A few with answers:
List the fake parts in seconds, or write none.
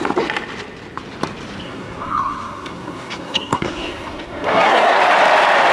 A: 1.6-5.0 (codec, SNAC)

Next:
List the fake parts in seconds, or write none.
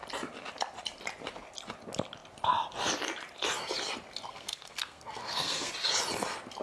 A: 4.3-5.7 (codec, SNAC)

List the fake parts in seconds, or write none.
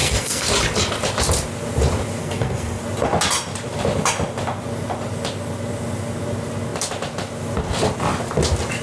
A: 0.0-0.5 (codec, SNAC); 2.2-2.8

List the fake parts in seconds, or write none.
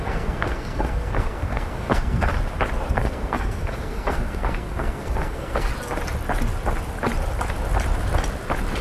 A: 0.0-2.3 (codec, SNAC); 2.9-5.7